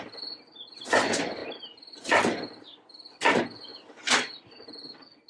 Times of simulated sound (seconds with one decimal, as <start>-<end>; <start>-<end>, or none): none

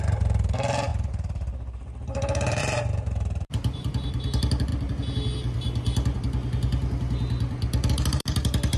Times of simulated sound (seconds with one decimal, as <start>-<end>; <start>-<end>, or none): 0.0-4.7; 7.9-8.8

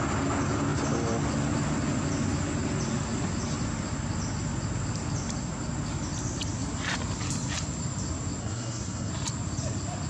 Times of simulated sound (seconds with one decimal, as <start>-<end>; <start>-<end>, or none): 8.4-9.1

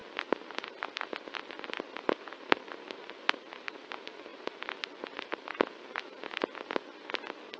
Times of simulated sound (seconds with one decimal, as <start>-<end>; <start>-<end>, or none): none

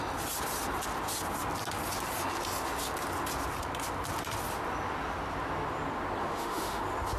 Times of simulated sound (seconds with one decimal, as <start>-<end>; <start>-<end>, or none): 6.2-6.8

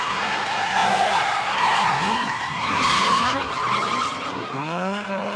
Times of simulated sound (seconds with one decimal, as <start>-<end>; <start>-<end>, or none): 0.0-3.5; 4.3-5.4

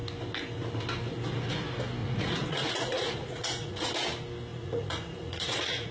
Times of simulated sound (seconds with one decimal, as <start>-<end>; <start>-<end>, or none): 2.0-3.9; 4.5-5.9